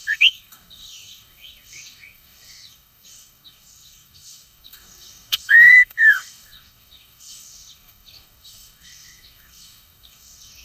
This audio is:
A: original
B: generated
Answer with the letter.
B